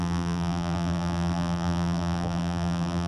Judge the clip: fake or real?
fake